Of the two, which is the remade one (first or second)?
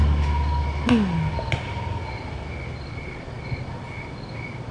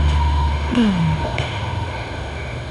second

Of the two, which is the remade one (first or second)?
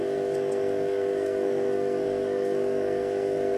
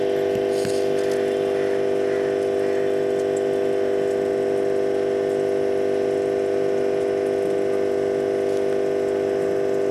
first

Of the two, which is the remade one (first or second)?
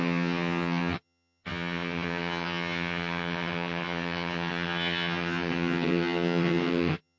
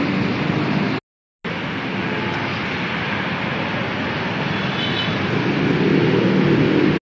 first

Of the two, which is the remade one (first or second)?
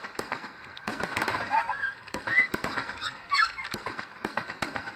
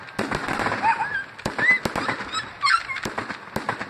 first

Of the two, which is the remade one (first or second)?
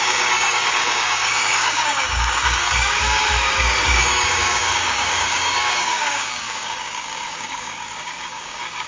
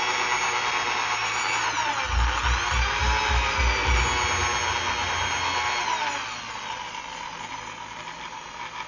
first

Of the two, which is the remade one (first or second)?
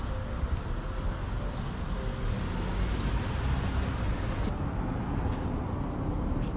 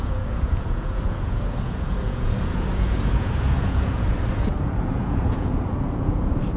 second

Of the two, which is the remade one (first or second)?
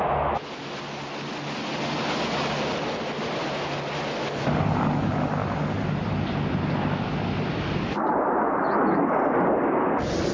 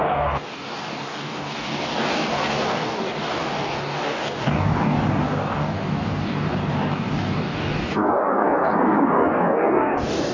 second